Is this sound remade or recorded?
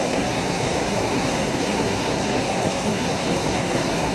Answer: remade